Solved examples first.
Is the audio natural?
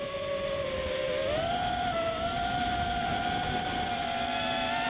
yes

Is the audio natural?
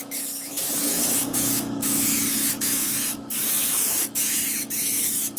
no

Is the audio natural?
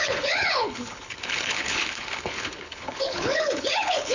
no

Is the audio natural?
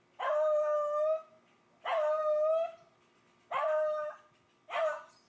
yes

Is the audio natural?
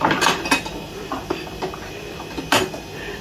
yes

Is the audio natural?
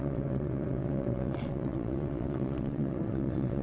no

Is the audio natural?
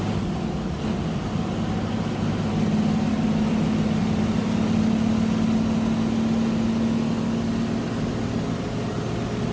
yes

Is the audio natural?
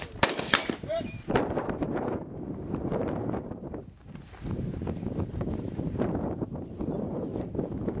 no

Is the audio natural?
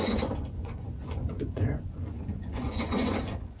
no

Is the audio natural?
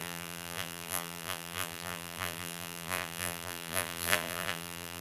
no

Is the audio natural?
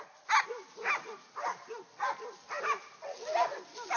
yes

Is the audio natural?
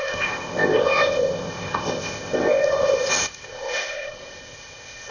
no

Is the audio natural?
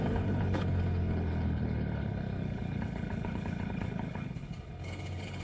no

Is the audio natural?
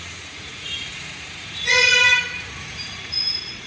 no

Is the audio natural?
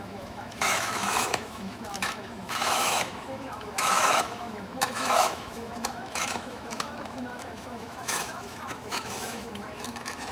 no